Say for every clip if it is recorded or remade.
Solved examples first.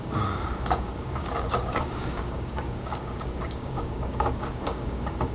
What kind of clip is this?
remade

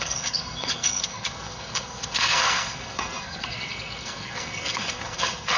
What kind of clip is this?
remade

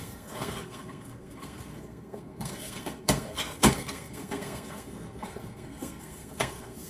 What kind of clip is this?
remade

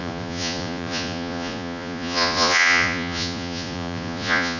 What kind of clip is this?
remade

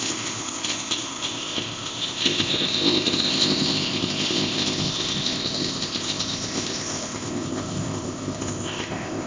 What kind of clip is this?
remade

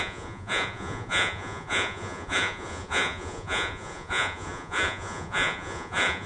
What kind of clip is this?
remade